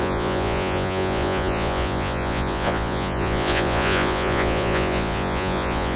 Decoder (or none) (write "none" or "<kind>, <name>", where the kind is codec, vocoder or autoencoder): vocoder, Vocos